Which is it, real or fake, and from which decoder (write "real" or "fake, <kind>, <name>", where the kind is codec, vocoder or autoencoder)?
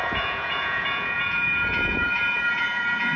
fake, vocoder, Vocos